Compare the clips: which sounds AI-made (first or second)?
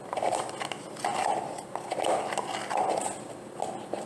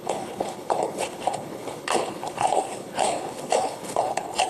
second